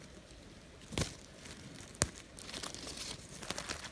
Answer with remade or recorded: recorded